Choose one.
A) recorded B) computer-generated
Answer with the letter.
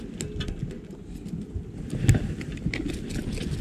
A